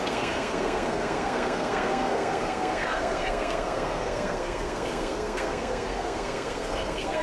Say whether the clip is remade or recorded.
remade